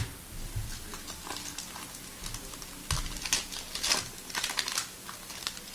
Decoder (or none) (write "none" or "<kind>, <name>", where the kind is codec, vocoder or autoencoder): none